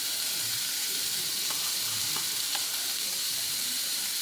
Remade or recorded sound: remade